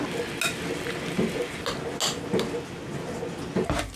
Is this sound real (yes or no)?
yes